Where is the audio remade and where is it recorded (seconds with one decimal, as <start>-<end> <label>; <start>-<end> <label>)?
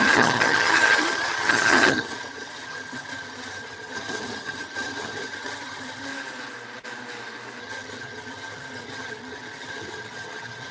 0.0-6.1 remade; 6.1-7.6 recorded; 7.6-10.7 remade